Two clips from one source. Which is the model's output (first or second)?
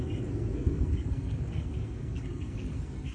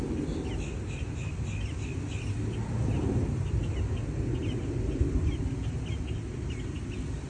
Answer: first